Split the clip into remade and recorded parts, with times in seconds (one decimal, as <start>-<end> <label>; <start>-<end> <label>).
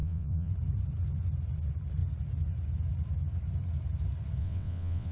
0.0-0.5 remade; 0.5-4.4 recorded; 4.4-5.1 remade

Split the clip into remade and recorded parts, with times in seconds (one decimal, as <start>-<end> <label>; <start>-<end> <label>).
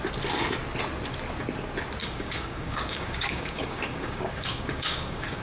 0.0-2.0 recorded; 2.0-5.4 remade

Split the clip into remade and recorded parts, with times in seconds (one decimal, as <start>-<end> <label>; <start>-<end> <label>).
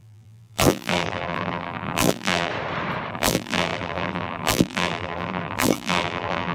0.0-2.5 remade; 2.5-3.1 recorded; 3.1-6.5 remade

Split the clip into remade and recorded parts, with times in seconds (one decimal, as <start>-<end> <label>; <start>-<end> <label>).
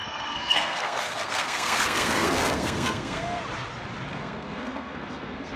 0.0-3.4 remade; 3.4-4.1 recorded; 4.1-5.6 remade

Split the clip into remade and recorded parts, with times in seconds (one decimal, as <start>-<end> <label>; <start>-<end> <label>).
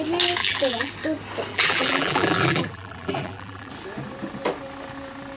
0.0-0.4 recorded; 0.4-0.9 remade; 0.9-1.5 recorded; 1.5-3.7 remade; 3.7-5.4 recorded